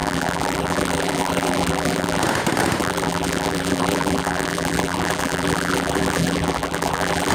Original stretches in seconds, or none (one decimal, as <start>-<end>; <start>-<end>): 2.2-2.8